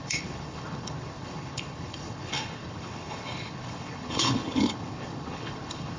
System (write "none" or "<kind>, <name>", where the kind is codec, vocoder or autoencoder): codec, HILCodec